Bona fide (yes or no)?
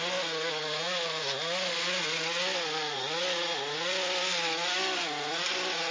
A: yes